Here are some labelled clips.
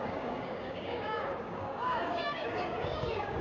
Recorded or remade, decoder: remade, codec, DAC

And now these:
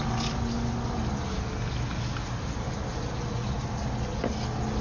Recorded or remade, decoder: recorded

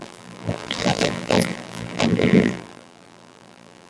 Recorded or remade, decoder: remade, vocoder, BigVGAN v2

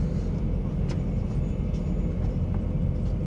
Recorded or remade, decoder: recorded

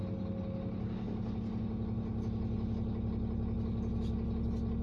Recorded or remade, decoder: recorded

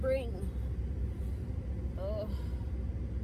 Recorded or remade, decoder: recorded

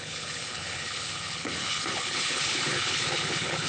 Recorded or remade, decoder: remade, codec, HILCodec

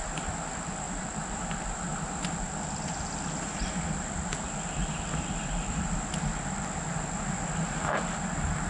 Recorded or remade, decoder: remade, vocoder, BigVGAN v2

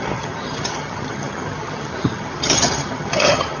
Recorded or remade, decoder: remade, vocoder, HiFi-GAN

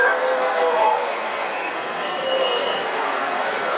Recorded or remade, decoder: remade, codec, SNAC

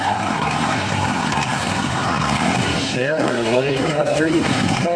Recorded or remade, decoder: remade, codec, SNAC